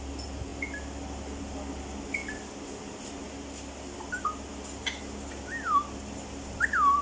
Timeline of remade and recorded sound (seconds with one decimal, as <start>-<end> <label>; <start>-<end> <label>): 0.0-7.0 recorded